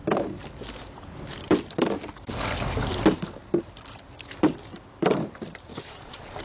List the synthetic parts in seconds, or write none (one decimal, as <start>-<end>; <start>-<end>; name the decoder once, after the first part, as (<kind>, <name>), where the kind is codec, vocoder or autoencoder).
5.7-6.4 (vocoder, Vocos)